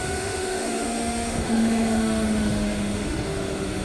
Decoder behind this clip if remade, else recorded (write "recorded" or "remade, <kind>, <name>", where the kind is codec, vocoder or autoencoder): remade, autoencoder, DAC-VAE